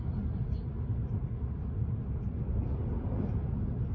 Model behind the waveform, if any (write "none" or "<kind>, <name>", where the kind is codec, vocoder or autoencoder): none